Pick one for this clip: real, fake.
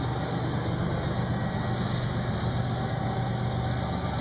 real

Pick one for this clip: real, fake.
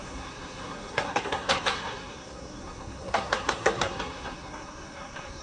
fake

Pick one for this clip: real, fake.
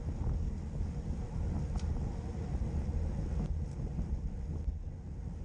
real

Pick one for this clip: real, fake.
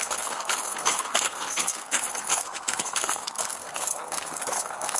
fake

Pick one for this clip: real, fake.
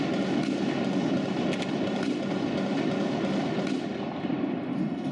real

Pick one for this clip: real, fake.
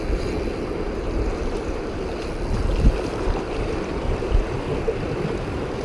real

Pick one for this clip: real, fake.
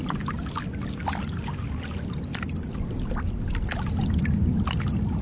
real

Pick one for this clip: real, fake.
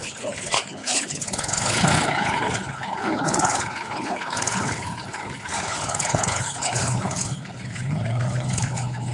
fake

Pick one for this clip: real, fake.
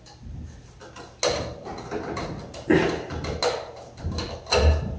real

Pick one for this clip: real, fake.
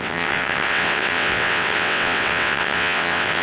fake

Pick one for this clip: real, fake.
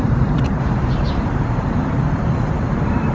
fake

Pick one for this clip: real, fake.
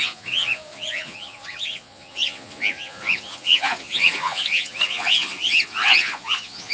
fake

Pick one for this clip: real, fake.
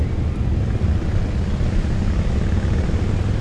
real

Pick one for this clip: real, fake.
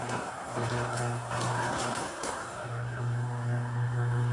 fake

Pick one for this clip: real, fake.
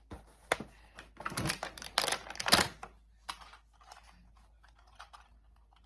real